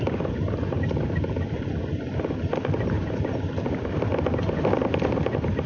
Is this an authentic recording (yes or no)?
yes